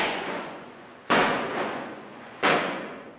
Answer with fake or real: fake